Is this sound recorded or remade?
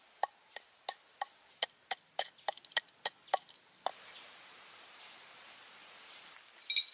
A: recorded